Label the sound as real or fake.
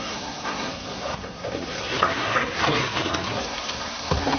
fake